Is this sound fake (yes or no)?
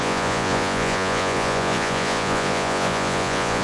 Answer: yes